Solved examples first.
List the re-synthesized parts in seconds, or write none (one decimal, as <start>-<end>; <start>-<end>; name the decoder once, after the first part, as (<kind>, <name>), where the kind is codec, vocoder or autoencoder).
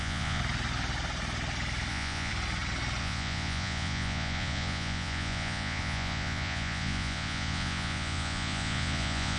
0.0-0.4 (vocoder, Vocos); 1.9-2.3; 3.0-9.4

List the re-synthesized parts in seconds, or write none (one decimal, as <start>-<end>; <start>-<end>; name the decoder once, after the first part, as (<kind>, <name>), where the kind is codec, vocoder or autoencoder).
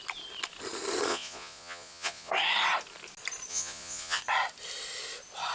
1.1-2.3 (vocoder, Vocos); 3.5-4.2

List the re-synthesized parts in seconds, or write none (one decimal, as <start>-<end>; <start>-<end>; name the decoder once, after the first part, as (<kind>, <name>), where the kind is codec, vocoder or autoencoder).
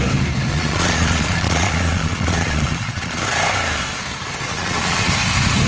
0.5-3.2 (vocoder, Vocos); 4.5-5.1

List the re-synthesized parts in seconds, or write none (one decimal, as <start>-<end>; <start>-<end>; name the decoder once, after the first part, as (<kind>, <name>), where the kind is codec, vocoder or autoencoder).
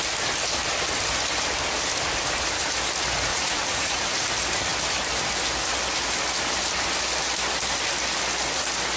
3.3-4.0 (vocoder, Vocos)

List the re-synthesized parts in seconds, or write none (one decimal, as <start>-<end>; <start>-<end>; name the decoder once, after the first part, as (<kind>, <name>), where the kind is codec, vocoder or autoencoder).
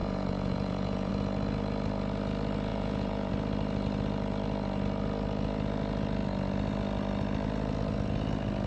0.0-1.1 (vocoder, Vocos); 2.7-3.3